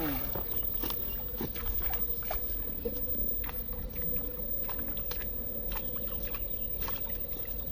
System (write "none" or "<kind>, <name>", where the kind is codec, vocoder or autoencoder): none